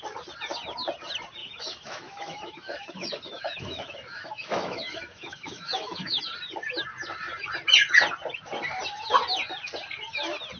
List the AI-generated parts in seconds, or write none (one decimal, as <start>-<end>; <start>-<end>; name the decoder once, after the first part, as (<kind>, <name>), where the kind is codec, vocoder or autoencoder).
1.4-6.2 (autoencoder, DAC-VAE)